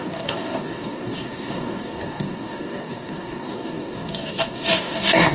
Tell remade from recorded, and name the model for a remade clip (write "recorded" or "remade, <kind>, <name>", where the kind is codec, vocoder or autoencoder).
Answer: remade, codec, DAC